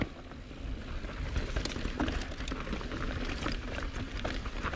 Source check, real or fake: real